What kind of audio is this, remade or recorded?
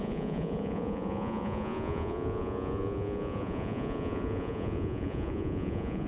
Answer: remade